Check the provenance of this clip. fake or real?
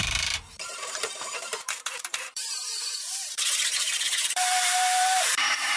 fake